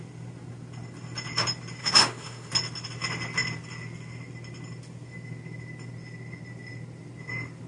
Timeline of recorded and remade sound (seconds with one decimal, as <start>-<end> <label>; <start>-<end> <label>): 0.0-1.8 recorded; 1.8-2.5 remade; 2.5-7.7 recorded